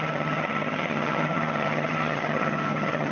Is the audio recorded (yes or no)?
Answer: no